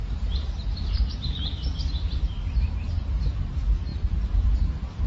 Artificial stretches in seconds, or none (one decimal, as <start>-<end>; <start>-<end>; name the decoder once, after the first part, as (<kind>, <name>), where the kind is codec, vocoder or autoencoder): 0.0-1.5 (vocoder, BigVGAN v2); 2.9-3.9